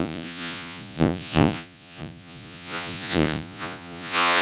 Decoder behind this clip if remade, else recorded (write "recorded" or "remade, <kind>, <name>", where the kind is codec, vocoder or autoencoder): remade, vocoder, Vocos